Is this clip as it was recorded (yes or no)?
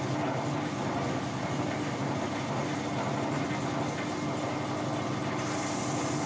yes